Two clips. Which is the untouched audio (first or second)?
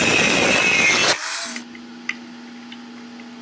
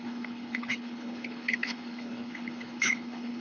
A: first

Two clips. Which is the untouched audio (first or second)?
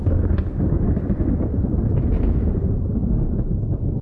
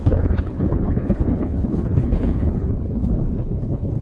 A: first